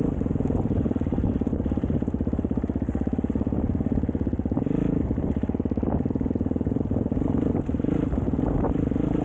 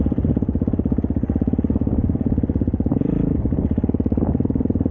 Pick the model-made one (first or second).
second